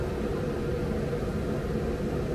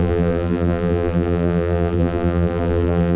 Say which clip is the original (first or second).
first